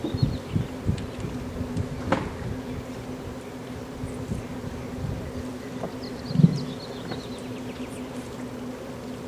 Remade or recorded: recorded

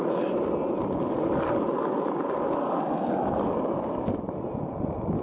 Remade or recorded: recorded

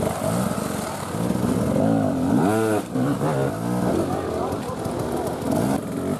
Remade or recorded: recorded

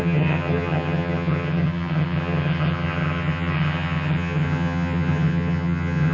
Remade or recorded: remade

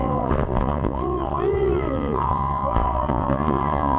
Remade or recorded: remade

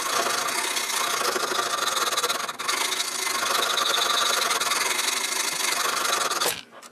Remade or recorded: recorded